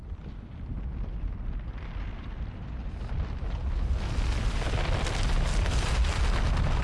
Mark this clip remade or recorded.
recorded